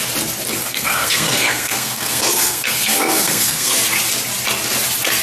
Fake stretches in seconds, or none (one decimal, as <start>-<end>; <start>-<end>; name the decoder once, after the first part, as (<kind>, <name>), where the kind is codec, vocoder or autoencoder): 0.6-3.7 (codec, SNAC)